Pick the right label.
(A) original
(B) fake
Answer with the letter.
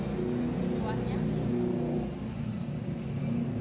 A